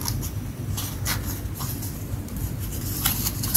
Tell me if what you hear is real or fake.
real